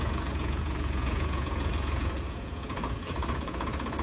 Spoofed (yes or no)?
yes